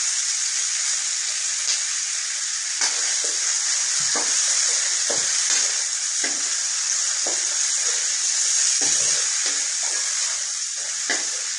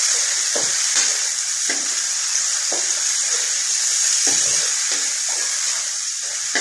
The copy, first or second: second